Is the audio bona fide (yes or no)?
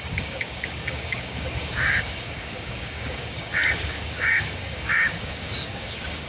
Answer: no